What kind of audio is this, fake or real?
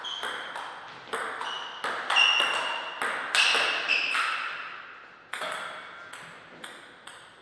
real